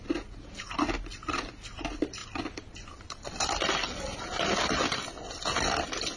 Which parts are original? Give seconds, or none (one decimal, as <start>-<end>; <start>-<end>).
0.0-6.2